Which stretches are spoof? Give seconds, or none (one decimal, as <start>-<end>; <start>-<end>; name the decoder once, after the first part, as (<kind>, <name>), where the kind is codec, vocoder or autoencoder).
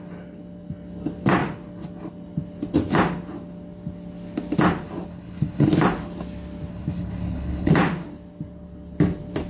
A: 5.1-5.7 (codec, HILCodec); 6.7-7.7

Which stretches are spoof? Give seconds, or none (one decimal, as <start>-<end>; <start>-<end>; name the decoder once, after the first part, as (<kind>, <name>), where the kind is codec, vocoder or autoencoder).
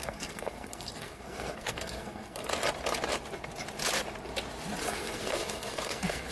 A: 0.0-2.5 (codec, SNAC); 4.8-6.3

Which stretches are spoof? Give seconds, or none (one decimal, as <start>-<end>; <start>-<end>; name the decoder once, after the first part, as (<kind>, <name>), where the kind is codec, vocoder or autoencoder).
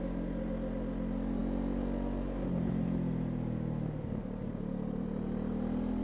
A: none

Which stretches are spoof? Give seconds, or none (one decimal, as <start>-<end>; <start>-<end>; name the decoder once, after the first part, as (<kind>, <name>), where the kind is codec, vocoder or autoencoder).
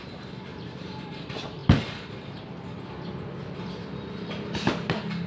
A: 0.5-1.2 (vocoder, BigVGAN v2)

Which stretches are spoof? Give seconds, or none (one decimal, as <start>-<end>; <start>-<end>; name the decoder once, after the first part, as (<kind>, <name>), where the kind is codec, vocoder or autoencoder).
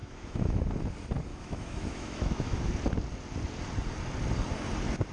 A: 0.0-0.6 (autoencoder, DAC-VAE); 1.3-2.7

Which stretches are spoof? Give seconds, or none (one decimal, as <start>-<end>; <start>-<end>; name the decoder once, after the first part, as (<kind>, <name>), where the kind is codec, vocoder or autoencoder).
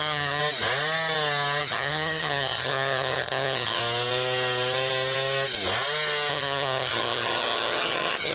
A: 0.0-0.4 (vocoder, HiFi-GAN); 1.6-3.8; 6.3-8.3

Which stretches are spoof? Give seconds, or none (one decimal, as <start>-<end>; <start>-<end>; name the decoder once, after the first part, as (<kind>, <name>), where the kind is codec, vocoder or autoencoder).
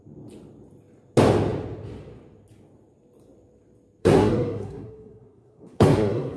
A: 4.0-6.4 (codec, SNAC)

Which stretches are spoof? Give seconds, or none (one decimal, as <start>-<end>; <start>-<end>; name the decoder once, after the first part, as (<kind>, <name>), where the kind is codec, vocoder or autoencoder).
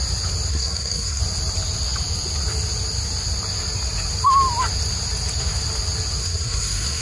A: 0.5-1.2 (codec, SNAC); 6.2-7.0